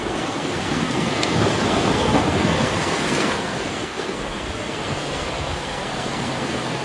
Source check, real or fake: fake